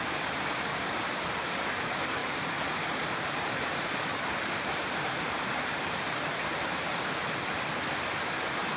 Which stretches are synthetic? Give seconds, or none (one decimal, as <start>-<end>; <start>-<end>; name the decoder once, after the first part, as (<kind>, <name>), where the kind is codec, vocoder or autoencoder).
0.7-1.2 (vocoder, BigVGAN v2); 2.2-6.4